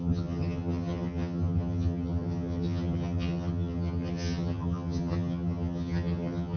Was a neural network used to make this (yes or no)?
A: yes